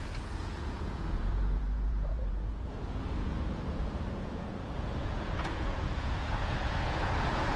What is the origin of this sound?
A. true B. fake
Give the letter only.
B